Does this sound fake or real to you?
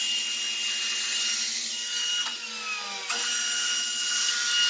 real